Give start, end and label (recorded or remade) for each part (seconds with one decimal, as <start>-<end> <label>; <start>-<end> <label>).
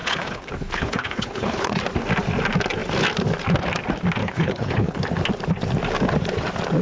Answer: 0.0-1.8 remade; 1.8-4.2 recorded; 4.2-5.0 remade; 5.0-6.8 recorded